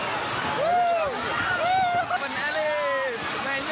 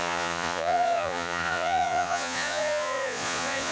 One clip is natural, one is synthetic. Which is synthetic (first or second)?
second